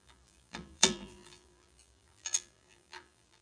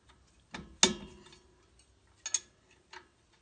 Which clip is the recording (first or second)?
second